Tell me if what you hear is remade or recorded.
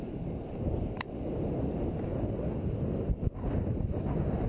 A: recorded